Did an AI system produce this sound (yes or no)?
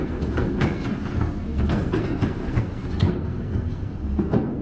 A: yes